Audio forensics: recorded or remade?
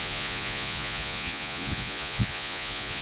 remade